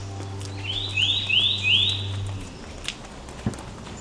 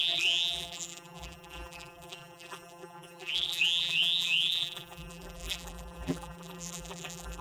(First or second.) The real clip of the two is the first